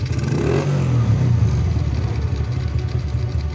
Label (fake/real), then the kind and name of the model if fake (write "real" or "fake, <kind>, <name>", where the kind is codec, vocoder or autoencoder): real